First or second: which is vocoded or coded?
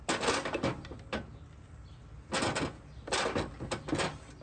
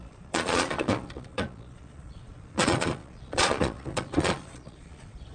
second